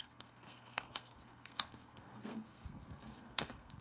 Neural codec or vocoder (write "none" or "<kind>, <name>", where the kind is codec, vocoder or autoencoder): codec, SNAC